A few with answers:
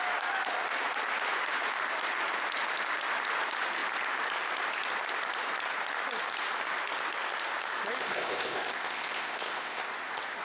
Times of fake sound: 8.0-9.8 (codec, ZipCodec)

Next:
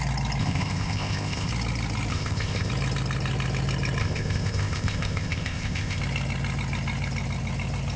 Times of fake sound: 0.4-1.5 (codec, ZipCodec); 2.1-2.7; 4.0-6.0

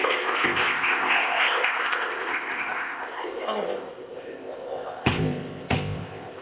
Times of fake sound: 0.0-6.4 (codec, ZipCodec)

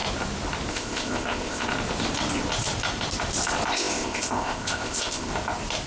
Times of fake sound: 0.7-1.7 (codec, ZipCodec); 3.7-5.3

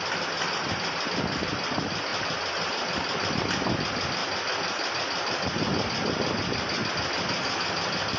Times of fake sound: none

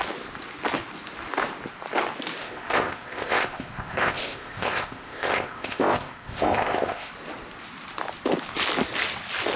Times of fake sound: 2.4-7.1 (codec, ZipCodec)